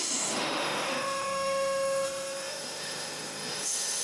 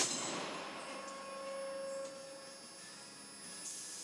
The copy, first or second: first